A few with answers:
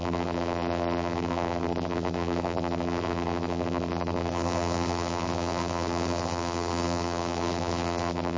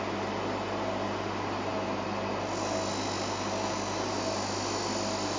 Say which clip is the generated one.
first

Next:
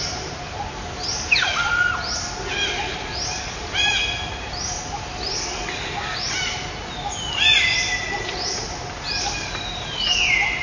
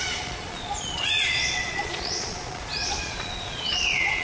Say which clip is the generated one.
second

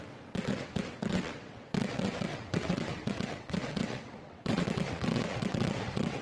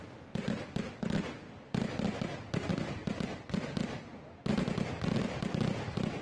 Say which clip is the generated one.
first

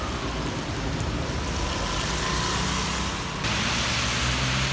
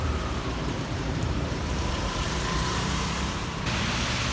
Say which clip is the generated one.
second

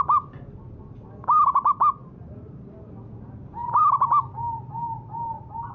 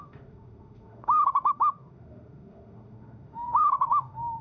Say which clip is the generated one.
second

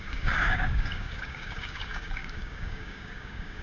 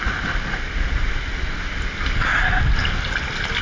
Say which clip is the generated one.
first